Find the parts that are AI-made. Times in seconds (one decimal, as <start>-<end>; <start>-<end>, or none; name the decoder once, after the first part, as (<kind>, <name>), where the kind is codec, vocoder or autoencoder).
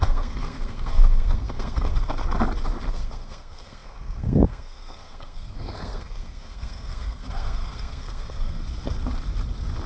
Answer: 0.0-2.1 (codec, SNAC); 2.9-8.6